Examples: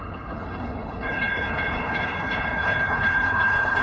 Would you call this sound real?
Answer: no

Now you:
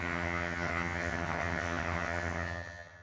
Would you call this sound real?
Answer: no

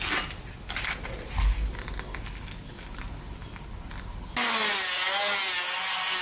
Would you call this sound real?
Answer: yes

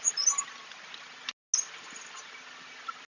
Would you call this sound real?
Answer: yes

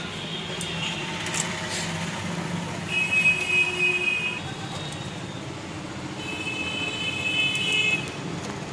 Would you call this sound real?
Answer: yes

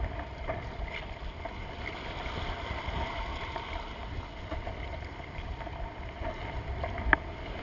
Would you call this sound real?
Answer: yes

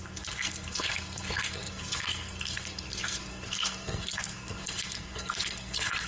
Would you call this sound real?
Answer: no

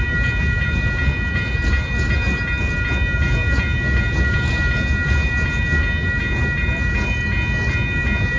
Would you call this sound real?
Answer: yes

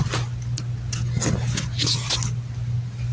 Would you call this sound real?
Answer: yes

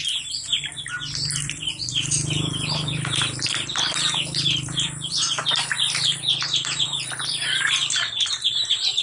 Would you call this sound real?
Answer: no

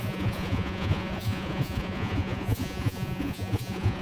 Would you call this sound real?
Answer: no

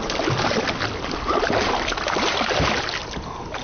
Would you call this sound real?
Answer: yes